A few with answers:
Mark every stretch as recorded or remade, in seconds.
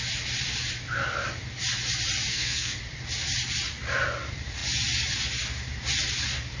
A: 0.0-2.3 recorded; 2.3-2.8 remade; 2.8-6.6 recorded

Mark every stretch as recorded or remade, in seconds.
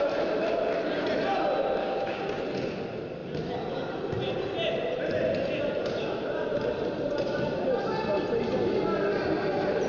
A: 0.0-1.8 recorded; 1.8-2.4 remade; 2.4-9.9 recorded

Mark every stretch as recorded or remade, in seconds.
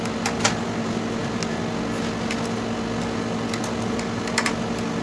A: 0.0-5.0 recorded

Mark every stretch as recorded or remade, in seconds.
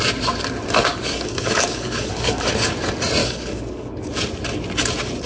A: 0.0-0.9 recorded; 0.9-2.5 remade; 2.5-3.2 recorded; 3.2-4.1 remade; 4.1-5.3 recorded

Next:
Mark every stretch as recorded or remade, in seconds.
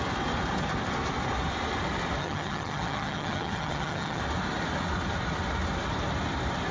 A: 0.0-2.2 recorded; 2.2-4.2 remade; 4.2-6.7 recorded